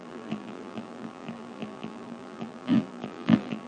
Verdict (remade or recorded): remade